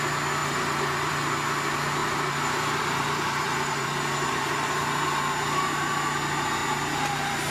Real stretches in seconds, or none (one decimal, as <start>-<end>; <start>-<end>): 0.0-0.4; 1.1-2.0; 4.7-7.5